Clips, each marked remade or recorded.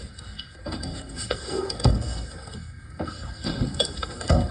remade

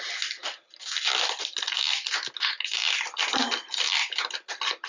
recorded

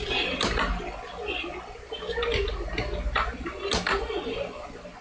recorded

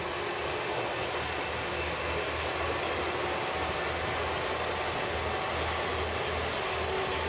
recorded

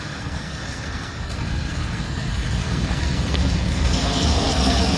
remade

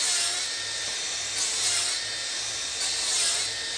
recorded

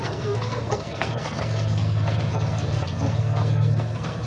remade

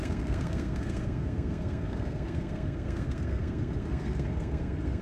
remade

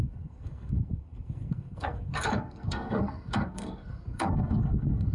remade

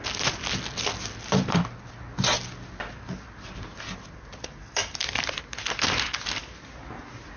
recorded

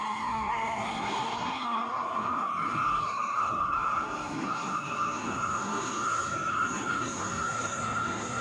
remade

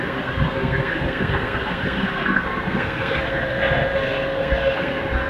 remade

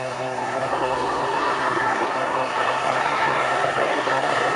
remade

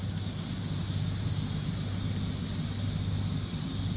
recorded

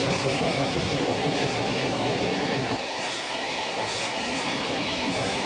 remade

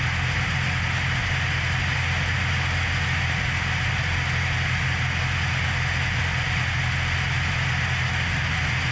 recorded